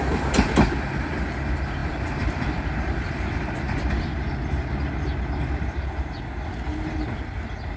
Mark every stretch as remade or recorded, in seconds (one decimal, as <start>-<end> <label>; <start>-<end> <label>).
0.0-1.8 recorded; 1.8-4.3 remade; 4.3-7.8 recorded